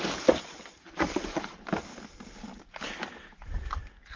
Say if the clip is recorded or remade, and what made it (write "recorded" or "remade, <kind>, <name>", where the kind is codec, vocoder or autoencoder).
recorded